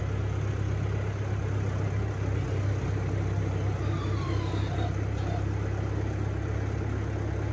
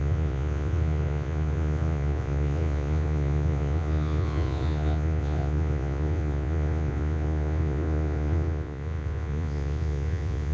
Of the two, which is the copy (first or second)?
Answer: second